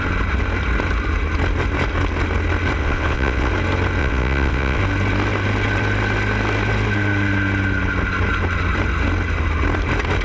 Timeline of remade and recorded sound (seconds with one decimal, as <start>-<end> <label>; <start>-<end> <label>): 0.0-2.8 recorded; 2.8-3.5 remade; 3.5-4.0 recorded; 4.0-4.8 remade; 4.8-10.2 recorded